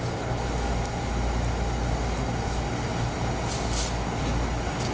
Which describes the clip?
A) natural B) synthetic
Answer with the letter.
A